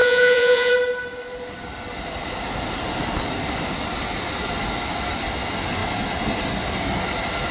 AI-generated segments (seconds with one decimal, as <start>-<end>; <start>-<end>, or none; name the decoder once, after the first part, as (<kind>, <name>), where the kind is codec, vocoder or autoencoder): 0.0-0.7 (vocoder, Vocos)